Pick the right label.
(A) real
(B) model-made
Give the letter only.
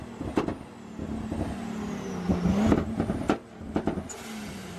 A